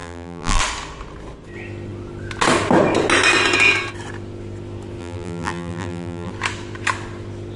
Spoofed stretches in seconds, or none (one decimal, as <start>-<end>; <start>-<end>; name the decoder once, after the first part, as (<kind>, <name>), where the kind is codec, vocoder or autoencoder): 0.0-0.6 (vocoder, BigVGAN v2); 5.0-6.3